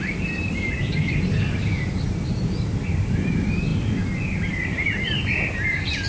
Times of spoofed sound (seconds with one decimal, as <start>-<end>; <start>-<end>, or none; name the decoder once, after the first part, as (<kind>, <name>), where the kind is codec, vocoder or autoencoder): none